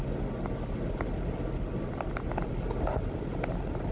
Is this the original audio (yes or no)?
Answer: yes